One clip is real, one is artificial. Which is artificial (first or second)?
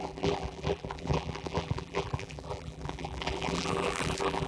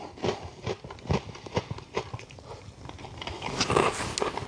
first